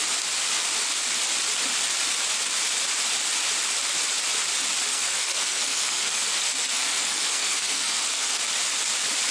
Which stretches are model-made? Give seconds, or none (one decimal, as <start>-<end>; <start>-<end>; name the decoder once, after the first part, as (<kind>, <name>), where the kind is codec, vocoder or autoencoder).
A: 4.9-8.4 (codec, SNAC)